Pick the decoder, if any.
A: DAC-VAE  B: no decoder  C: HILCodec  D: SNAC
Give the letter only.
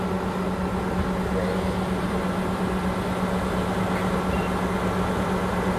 B